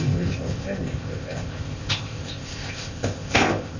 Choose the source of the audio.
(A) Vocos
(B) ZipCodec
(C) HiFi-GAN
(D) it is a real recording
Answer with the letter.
B